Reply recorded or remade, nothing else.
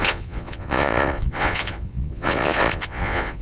remade